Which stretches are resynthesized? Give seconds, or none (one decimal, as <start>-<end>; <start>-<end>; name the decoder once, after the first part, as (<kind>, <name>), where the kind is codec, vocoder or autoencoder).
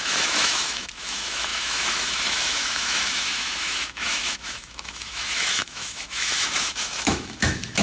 0.0-7.8 (autoencoder, DAC-VAE)